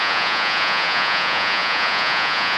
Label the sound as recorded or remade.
remade